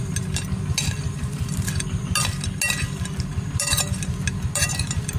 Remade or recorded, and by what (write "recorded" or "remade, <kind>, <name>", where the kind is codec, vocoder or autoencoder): recorded